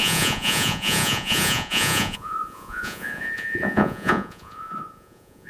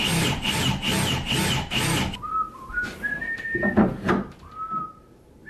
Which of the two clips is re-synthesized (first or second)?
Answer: first